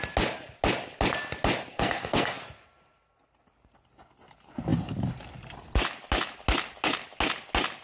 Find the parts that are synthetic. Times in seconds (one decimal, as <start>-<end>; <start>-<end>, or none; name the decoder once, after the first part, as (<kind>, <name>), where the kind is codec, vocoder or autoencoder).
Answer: 1.7-2.4 (codec, SNAC)